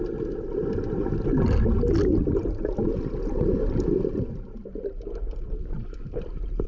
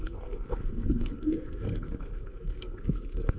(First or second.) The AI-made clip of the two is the second